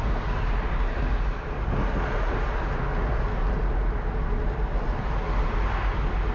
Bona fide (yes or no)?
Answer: yes